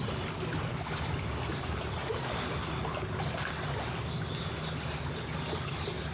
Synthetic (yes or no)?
no